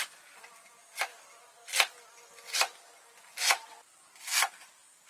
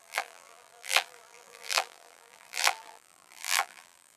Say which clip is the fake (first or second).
second